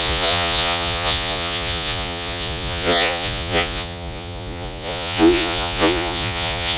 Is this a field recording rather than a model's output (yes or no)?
no